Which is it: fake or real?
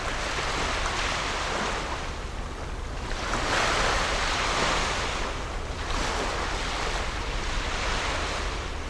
real